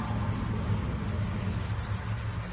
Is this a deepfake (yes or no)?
no